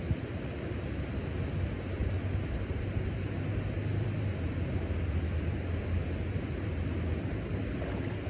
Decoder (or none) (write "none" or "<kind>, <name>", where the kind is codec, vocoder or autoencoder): none